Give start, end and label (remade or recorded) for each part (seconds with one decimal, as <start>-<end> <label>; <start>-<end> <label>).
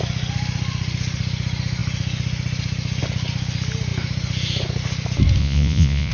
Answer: 0.0-5.4 recorded; 5.4-6.1 remade